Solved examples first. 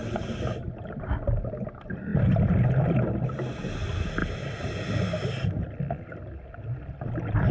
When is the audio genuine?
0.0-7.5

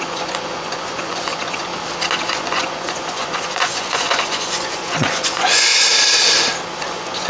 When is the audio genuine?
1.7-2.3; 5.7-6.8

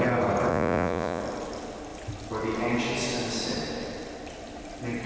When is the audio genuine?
0.0-0.5; 1.2-5.1

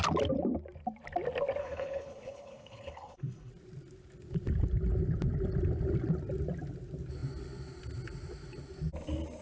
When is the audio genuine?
0.0-1.6; 3.5-9.4

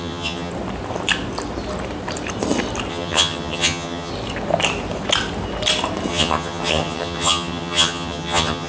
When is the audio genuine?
0.5-2.9; 4.1-6.1